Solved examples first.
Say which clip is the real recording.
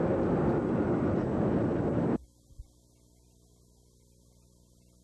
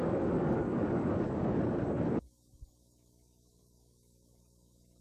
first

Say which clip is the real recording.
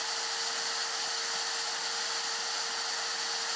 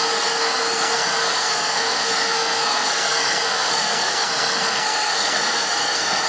first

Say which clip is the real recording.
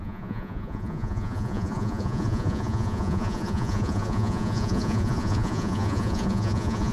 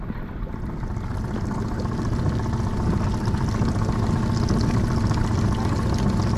second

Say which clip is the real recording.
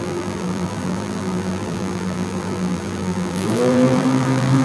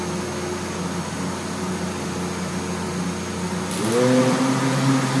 second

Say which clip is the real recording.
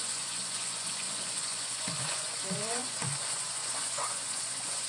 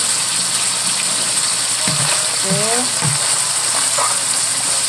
second